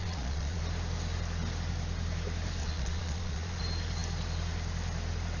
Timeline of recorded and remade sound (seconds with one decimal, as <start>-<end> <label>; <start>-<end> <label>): 0.0-0.6 remade; 0.6-2.6 recorded; 2.6-3.6 remade; 3.6-5.4 recorded